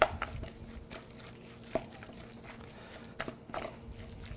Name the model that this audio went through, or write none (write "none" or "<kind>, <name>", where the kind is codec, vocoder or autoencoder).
none